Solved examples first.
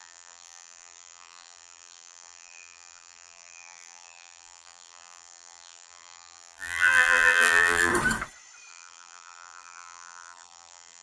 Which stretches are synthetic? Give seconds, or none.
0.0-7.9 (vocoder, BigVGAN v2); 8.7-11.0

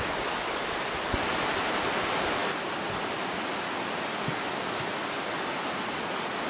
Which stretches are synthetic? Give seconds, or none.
none

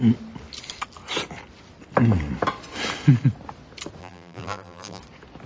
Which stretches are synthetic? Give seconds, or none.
4.0-5.0 (vocoder, BigVGAN v2)

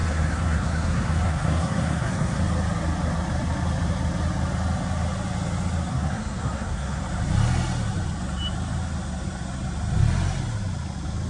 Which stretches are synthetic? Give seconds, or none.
0.0-2.4 (codec, SNAC); 5.9-7.0